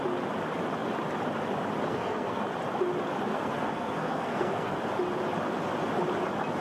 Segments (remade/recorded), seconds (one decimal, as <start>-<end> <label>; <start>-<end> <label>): 0.0-1.9 recorded; 1.9-2.4 remade; 2.4-3.3 recorded; 3.3-4.8 remade; 4.8-6.6 recorded

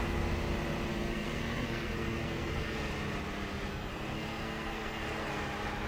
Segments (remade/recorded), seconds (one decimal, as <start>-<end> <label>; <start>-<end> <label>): 0.0-0.9 recorded; 0.9-2.9 remade; 2.9-3.7 recorded; 3.7-5.4 remade; 5.4-5.9 recorded